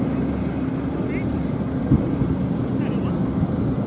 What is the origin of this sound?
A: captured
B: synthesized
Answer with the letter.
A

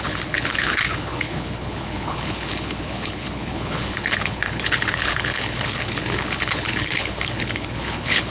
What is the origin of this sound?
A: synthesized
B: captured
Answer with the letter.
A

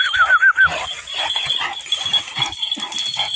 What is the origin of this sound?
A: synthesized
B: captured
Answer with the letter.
B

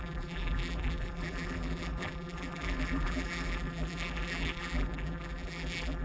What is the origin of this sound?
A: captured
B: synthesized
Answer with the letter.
B